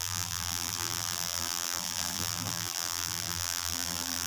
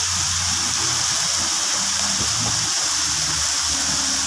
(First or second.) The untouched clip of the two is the second